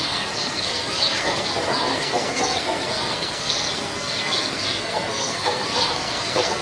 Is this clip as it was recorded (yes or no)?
no